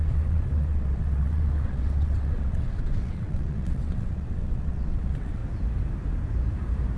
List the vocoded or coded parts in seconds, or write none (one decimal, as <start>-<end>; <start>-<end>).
0.0-5.4